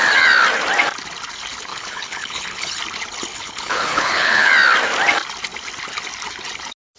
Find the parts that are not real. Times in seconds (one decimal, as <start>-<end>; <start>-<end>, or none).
1.7-2.8; 3.3-4.5